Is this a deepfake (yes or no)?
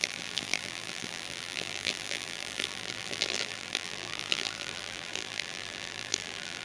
yes